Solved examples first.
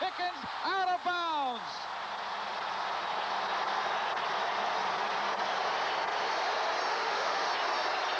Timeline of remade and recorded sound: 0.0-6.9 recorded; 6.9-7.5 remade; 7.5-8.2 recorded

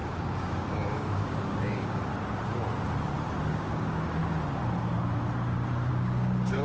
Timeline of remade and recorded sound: 0.0-2.1 remade; 2.1-3.5 recorded; 3.5-4.2 remade; 4.2-5.9 recorded; 5.9-6.6 remade

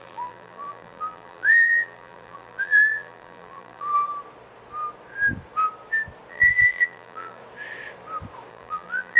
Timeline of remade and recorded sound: 0.0-3.9 remade; 3.9-6.3 recorded; 6.3-7.4 remade; 7.4-8.5 recorded; 8.5-9.2 remade

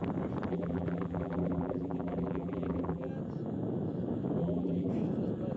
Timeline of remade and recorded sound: 0.0-0.5 recorded; 0.5-3.1 remade; 3.1-4.4 recorded; 4.4-4.9 remade; 4.9-5.6 recorded

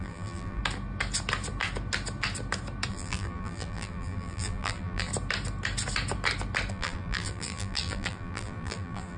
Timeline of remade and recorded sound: 0.0-0.6 remade; 0.6-2.9 recorded; 2.9-5.1 remade; 5.1-6.7 recorded; 6.7-9.2 remade

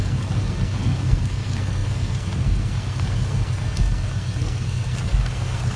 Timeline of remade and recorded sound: 0.0-5.8 remade